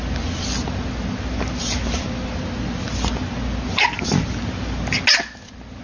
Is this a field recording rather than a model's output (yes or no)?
yes